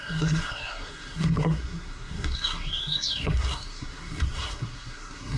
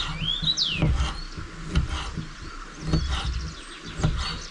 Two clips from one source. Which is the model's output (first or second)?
first